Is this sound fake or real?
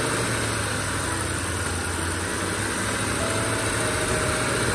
real